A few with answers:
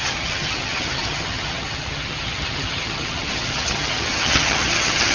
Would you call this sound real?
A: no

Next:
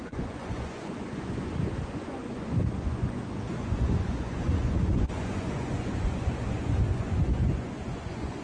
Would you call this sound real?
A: no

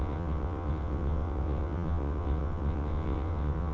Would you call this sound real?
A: no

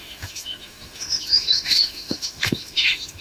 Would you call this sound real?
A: no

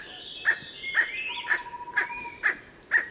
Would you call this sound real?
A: no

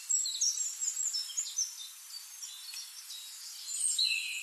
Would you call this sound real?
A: yes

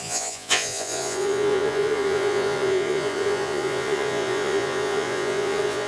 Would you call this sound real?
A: no